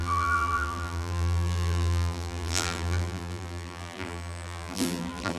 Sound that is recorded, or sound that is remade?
remade